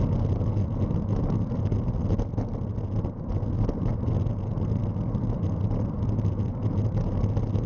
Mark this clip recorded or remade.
recorded